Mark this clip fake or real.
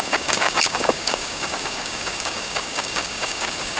fake